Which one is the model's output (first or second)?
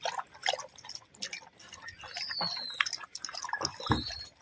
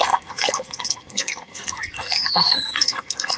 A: second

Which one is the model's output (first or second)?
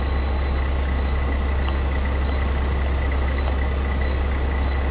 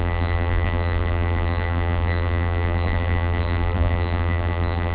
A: second